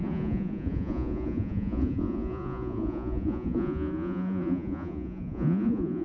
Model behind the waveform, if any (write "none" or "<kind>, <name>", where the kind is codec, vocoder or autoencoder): vocoder, Vocos